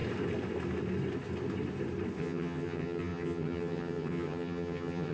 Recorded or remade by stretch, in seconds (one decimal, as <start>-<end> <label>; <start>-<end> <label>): 0.0-2.2 recorded; 2.2-5.1 remade